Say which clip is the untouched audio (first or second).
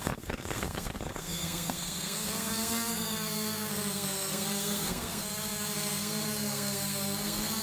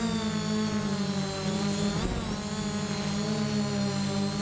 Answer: second